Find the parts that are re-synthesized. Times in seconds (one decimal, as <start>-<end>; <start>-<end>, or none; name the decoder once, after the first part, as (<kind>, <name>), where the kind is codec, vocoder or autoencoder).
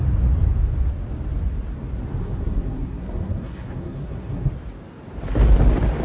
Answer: 2.2-4.5 (codec, SNAC)